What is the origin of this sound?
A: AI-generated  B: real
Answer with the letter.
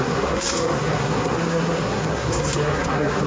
A